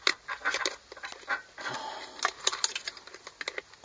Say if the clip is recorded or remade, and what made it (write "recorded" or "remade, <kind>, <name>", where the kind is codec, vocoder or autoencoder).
recorded